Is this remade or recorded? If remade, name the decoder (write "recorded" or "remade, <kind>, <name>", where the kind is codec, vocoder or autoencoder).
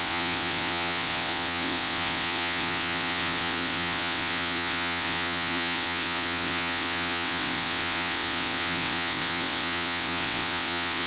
remade, vocoder, WaveNeXt